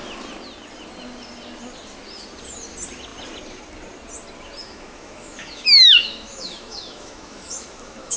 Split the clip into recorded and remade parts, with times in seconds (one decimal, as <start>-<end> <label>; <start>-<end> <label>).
0.0-4.6 recorded; 4.6-8.2 remade